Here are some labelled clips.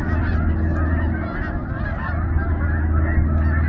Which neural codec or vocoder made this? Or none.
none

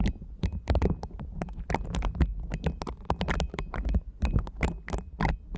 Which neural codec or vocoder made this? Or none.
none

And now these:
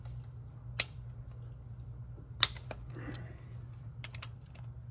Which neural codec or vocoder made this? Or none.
none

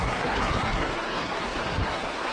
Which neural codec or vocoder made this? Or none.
codec, SNAC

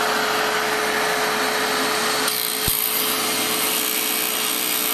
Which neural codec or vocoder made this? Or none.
none